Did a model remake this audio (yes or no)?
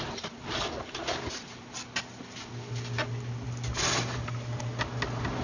no